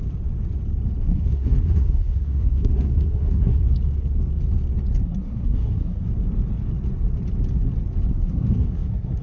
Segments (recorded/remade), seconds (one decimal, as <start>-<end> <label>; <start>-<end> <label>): 0.0-1.0 recorded; 1.0-3.6 remade; 3.6-5.0 recorded; 5.0-6.1 remade; 6.1-8.1 recorded; 8.1-9.2 remade